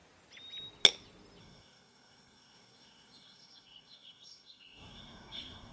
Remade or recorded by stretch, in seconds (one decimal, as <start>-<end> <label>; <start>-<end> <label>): 0.0-1.4 recorded; 1.4-5.7 remade